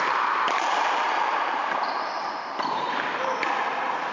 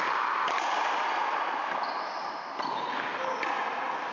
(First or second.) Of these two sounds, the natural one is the second